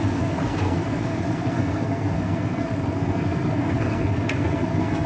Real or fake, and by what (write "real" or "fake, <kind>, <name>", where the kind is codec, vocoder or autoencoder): fake, codec, SNAC